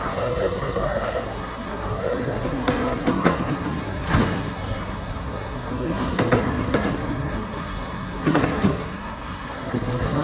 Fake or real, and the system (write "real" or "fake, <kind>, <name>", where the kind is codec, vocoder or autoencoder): fake, codec, SNAC